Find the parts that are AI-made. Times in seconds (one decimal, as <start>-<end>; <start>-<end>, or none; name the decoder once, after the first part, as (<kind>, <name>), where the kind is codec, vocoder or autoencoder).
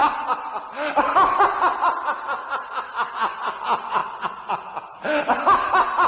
none